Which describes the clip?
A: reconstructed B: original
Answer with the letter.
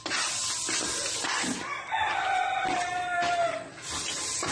B